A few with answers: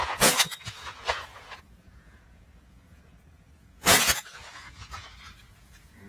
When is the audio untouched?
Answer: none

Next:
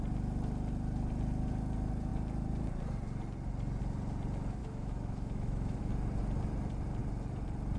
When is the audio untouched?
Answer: 0.0-4.6; 5.9-7.8